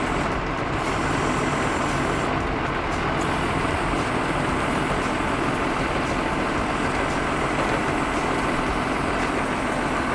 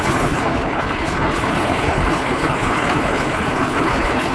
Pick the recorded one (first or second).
first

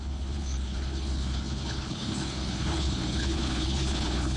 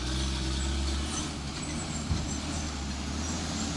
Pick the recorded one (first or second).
second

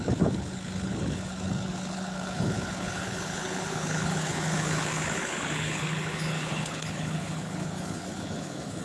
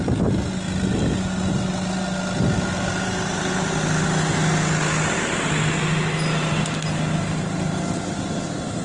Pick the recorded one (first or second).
second